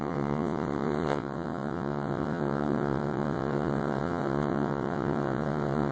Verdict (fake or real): fake